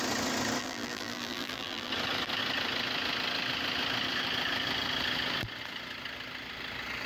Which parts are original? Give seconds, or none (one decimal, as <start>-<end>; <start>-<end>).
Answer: 0.0-0.6; 1.9-7.1